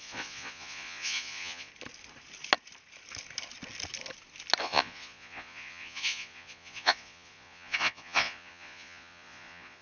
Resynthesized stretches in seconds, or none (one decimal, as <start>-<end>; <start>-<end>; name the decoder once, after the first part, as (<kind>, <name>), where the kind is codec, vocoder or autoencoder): 0.0-1.7 (vocoder, Vocos); 4.6-9.8